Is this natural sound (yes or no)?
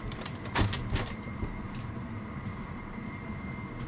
no